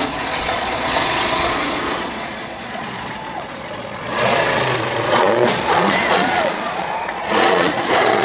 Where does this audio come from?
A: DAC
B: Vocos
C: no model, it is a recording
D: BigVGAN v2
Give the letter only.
B